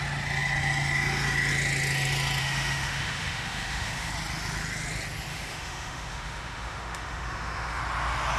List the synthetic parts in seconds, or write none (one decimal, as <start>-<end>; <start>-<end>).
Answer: 2.4-4.1; 5.3-7.8